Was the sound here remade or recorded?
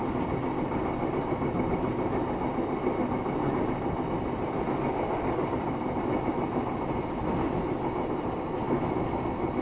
recorded